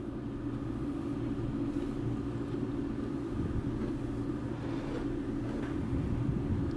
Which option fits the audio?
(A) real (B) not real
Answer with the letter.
A